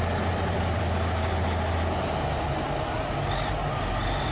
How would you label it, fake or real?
real